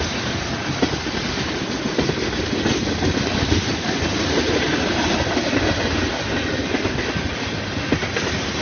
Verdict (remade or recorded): recorded